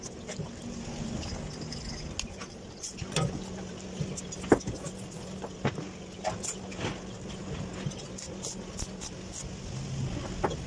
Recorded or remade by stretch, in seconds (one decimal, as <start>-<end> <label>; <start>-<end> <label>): 0.0-10.7 recorded